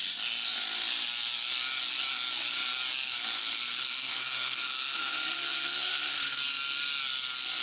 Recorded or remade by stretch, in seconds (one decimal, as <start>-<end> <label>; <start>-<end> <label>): 0.0-3.8 recorded; 3.8-6.4 remade; 6.4-7.6 recorded